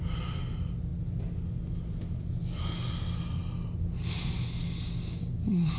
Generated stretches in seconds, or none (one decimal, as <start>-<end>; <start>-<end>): 4.6-5.8